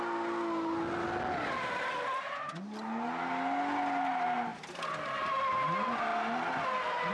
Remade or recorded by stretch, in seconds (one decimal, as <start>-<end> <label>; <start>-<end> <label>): 0.0-7.1 recorded